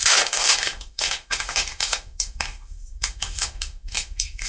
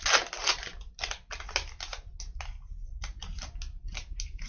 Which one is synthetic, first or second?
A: first